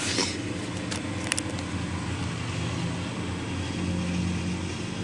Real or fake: real